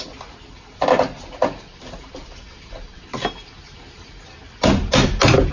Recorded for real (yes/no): yes